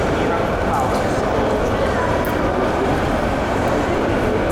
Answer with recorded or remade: recorded